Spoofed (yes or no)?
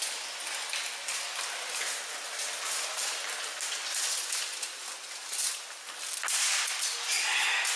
no